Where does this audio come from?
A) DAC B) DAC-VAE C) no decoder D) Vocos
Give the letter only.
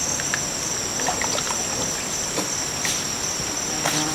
C